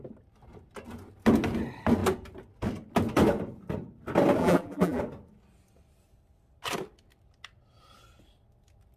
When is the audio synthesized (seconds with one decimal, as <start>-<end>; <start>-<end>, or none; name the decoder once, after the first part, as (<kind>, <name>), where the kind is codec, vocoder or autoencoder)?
4.4-5.0 (vocoder, BigVGAN v2)